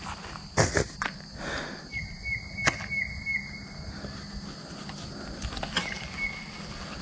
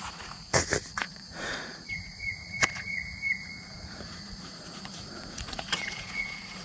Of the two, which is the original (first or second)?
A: first